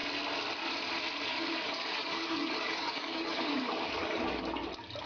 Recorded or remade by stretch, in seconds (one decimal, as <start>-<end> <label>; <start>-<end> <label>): 0.0-1.3 recorded; 1.3-4.4 remade; 4.4-5.1 recorded